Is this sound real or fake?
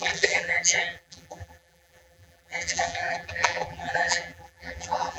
fake